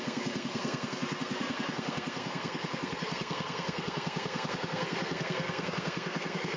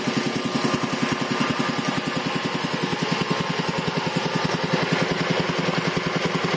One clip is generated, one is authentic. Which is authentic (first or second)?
second